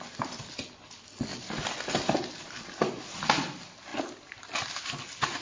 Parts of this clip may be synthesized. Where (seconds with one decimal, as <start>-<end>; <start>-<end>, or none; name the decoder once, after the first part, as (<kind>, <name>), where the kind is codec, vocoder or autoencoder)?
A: none